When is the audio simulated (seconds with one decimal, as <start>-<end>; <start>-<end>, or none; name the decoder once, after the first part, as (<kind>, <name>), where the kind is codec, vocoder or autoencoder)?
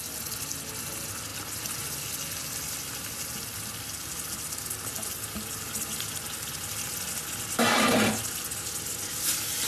none